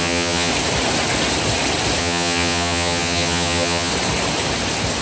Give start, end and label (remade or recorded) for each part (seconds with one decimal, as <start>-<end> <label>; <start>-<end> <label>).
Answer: 0.0-0.5 remade; 0.5-2.0 recorded; 2.0-3.9 remade; 3.9-5.0 recorded